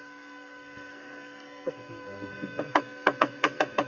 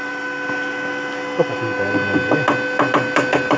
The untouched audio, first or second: second